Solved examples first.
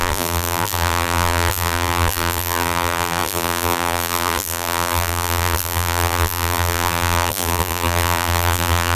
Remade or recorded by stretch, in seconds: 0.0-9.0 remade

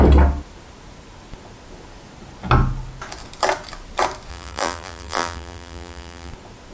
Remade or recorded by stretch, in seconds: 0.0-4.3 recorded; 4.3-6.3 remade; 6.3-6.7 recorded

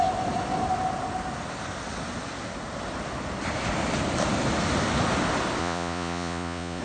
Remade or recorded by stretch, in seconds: 0.0-5.6 recorded; 5.6-6.8 remade

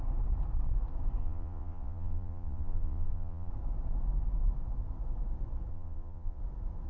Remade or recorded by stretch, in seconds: 0.0-1.2 recorded; 1.2-3.5 remade; 3.5-5.7 recorded; 5.7-6.4 remade; 6.4-6.9 recorded

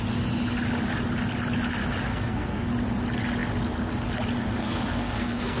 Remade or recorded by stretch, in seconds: 0.0-2.1 recorded; 2.1-2.7 remade; 2.7-4.6 recorded; 4.6-5.6 remade

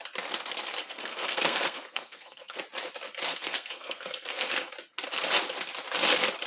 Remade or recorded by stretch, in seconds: 0.0-0.8 recorded; 0.8-2.6 remade; 2.6-3.3 recorded; 3.3-4.7 remade; 4.7-6.5 recorded

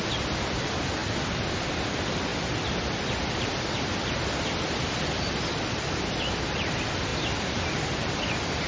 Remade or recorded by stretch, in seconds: 0.0-1.0 remade; 1.0-1.6 recorded; 1.6-7.1 remade; 7.1-7.7 recorded; 7.7-8.7 remade